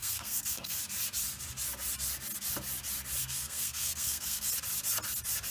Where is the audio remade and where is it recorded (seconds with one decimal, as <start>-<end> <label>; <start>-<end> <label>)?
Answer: 0.0-0.8 remade; 0.8-3.2 recorded; 3.2-4.5 remade; 4.5-5.5 recorded